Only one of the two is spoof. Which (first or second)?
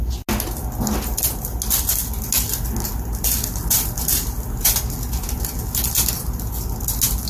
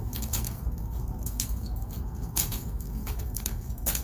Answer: second